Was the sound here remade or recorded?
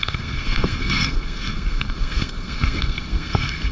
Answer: remade